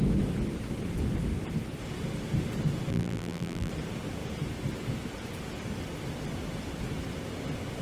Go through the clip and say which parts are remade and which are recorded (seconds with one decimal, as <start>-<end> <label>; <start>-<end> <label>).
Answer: 0.0-2.9 recorded; 2.9-3.7 remade; 3.7-7.8 recorded

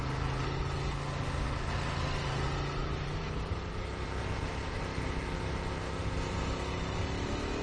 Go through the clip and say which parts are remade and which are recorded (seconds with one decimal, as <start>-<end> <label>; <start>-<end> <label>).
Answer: 0.0-2.8 recorded; 2.8-3.6 remade; 3.6-7.6 recorded

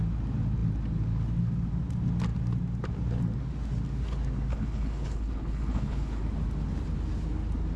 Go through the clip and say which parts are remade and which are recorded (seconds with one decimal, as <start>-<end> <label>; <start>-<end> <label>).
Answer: 0.0-4.5 recorded; 4.5-6.2 remade; 6.2-7.8 recorded

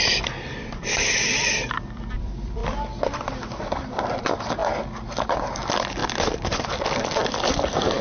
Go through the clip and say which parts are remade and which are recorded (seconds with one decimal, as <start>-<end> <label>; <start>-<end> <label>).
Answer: 0.0-2.6 remade; 2.6-4.1 recorded; 4.1-8.0 remade

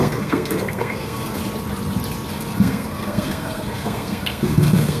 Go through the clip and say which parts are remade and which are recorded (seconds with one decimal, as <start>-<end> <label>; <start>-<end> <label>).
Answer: 0.0-1.4 remade; 1.4-2.3 recorded; 2.3-5.0 remade

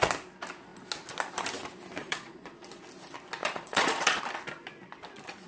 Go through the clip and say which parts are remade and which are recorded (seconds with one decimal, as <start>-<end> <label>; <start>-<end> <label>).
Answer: 0.0-2.0 recorded; 2.0-2.8 remade; 2.8-3.4 recorded; 3.4-4.2 remade; 4.2-5.5 recorded

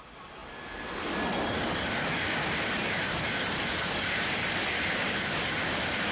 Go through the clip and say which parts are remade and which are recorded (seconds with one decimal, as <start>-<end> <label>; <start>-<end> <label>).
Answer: 0.0-6.1 recorded